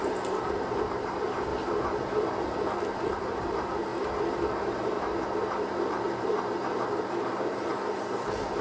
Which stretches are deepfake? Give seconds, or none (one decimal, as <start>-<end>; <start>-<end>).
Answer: 0.0-1.5; 2.4-3.9; 4.5-5.1; 5.9-8.6